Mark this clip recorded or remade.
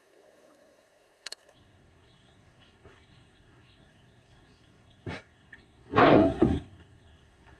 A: remade